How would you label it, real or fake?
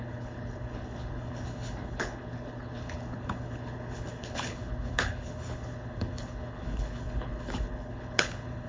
fake